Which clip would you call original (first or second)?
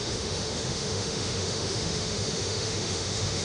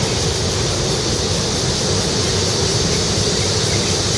second